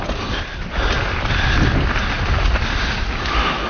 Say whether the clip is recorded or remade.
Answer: recorded